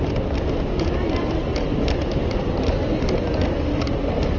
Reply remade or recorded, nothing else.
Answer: recorded